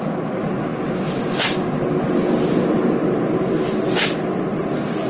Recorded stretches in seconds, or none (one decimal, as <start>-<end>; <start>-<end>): 0.0-5.1